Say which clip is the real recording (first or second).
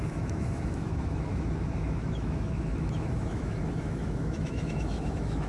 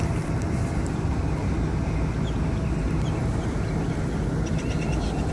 second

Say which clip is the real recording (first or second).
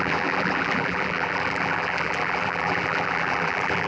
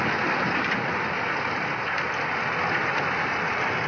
second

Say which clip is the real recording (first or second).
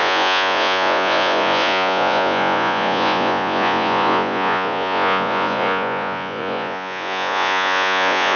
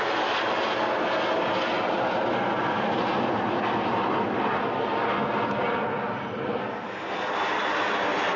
second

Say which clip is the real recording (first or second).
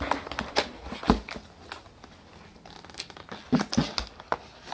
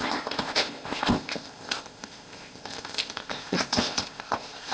first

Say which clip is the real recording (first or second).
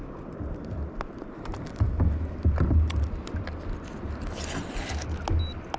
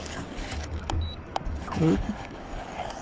first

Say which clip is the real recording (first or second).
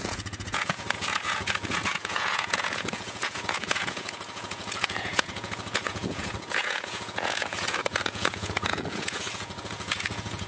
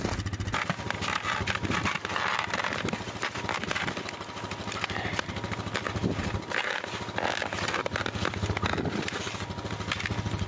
second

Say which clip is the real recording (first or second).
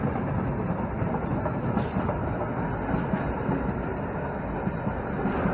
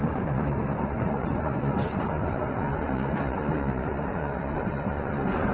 first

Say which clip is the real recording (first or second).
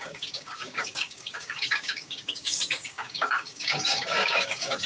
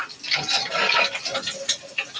second